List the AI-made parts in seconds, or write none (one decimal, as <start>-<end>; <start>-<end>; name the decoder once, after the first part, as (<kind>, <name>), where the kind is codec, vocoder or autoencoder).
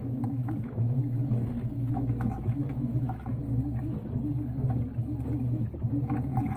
0.0-3.4 (autoencoder, DAC-VAE)